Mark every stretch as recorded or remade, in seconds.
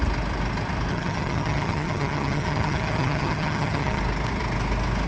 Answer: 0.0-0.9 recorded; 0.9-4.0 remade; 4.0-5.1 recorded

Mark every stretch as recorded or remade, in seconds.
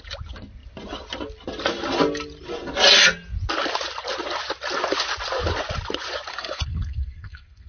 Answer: 0.0-6.3 recorded; 6.3-7.7 remade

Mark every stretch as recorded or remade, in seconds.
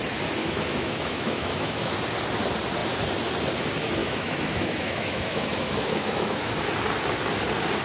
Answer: 0.0-0.4 recorded; 0.4-2.0 remade; 2.0-4.0 recorded; 4.0-6.5 remade; 6.5-7.8 recorded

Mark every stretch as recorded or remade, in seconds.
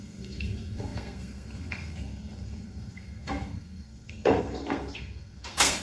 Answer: 0.0-5.8 remade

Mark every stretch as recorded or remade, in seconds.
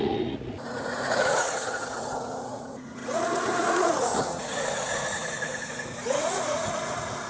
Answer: 0.0-7.3 remade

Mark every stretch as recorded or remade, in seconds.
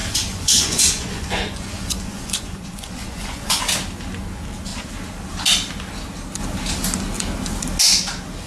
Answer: 0.0-3.6 remade; 3.6-8.5 recorded